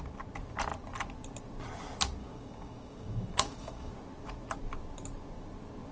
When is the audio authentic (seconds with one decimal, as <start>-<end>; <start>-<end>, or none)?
0.0-2.2; 3.9-5.9